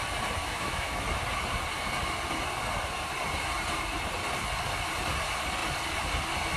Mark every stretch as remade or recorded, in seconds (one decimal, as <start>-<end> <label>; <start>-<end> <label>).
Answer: 0.0-0.4 recorded; 0.4-1.0 remade; 1.0-6.6 recorded